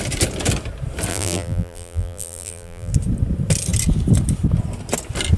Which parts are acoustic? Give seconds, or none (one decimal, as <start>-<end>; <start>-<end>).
0.0-1.1; 2.9-5.4